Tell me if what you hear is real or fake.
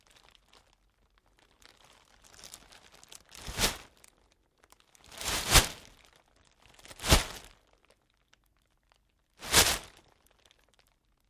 real